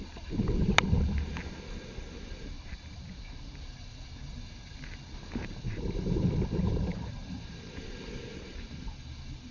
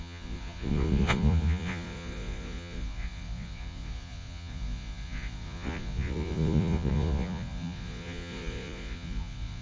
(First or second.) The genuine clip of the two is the first